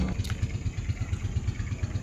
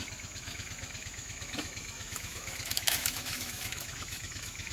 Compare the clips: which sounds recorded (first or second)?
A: first